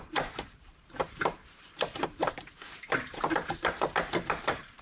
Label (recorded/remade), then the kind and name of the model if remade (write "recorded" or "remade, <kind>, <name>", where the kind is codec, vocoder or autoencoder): remade, vocoder, BigVGAN v2